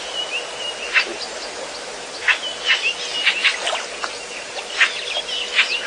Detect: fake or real real